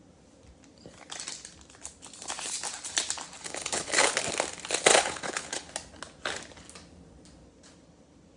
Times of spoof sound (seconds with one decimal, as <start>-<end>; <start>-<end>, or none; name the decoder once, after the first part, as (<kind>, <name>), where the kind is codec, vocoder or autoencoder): 3.4-4.1 (codec, HILCodec); 4.9-5.7

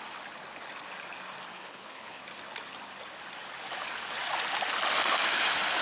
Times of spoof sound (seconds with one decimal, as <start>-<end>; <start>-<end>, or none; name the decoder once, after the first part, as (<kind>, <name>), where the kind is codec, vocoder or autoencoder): 1.5-2.2 (codec, HILCodec)

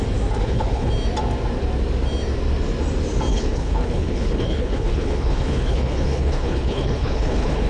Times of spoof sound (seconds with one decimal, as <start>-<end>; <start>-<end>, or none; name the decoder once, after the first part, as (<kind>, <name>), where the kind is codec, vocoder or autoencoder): 0.4-0.9 (codec, HILCodec); 3.3-7.7

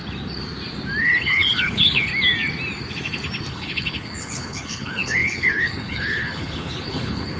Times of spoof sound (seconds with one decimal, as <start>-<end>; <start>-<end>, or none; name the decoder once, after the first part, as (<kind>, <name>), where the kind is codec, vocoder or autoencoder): 1.0-2.1 (codec, HILCodec); 3.5-7.4